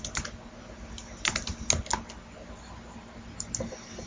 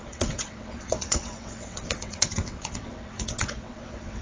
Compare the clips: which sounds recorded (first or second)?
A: first